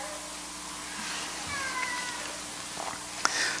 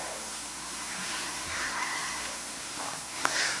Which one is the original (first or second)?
first